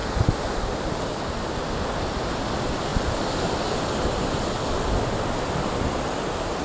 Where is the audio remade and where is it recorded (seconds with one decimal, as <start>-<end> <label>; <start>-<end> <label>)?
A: 0.0-6.6 recorded